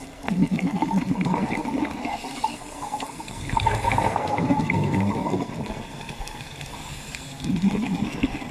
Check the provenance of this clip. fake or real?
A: fake